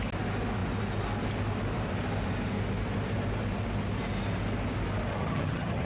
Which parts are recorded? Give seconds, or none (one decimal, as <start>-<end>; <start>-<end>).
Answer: 0.0-5.2